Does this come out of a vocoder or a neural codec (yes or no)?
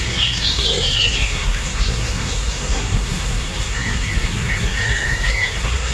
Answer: yes